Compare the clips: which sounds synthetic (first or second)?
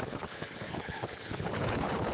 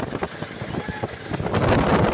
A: first